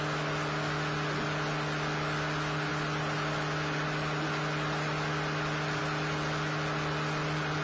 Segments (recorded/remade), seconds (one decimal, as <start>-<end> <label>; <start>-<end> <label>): 0.0-7.6 recorded